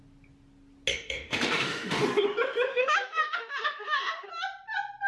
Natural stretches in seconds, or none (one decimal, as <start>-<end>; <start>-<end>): 0.0-0.9; 2.0-2.7; 4.3-5.1